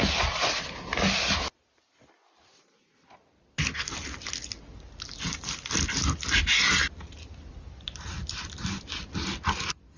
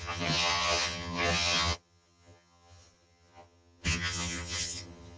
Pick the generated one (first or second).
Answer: second